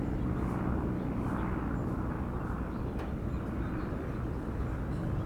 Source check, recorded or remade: recorded